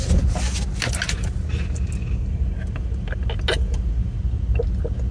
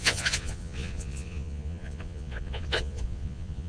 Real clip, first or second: first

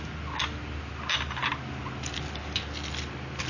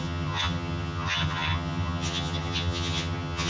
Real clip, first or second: first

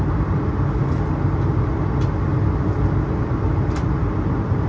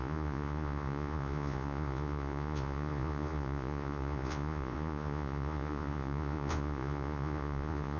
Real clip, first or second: first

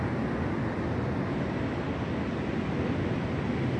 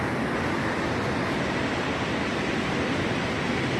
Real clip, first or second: first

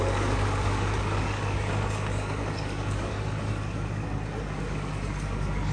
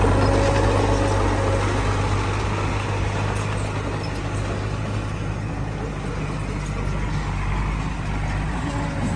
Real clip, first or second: second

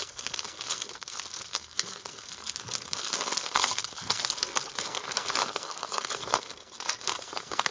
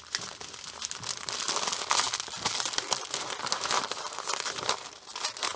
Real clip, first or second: second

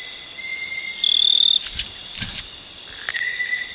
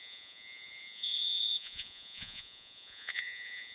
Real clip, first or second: first